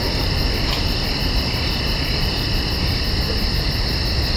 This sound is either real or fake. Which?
real